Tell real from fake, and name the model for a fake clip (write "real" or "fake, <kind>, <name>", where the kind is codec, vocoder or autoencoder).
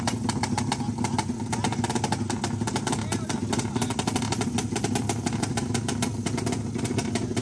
real